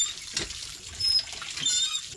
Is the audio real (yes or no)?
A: yes